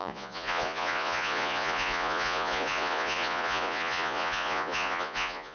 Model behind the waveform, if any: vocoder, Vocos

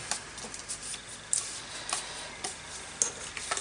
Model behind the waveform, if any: none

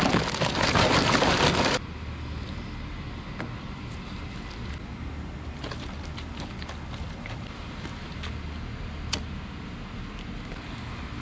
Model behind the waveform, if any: none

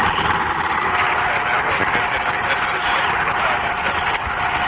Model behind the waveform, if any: none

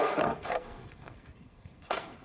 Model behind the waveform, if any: codec, SNAC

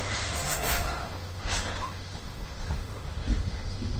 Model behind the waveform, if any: autoencoder, DAC-VAE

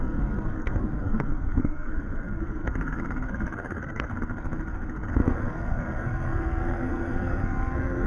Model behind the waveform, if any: codec, SNAC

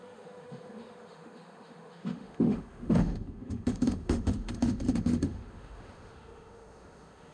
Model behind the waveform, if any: autoencoder, DAC-VAE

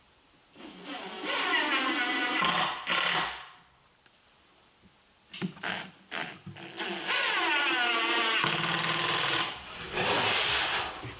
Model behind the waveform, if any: none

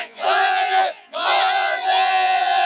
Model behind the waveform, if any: vocoder, Vocos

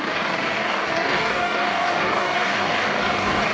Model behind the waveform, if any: codec, DAC